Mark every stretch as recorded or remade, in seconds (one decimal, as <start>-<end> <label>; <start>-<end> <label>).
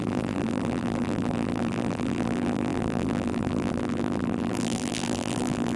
0.0-5.8 remade